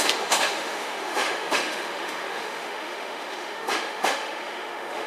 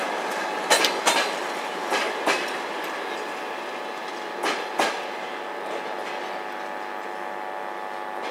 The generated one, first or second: first